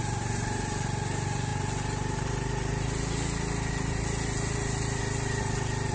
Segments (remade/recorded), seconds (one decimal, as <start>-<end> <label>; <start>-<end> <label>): 0.0-5.9 recorded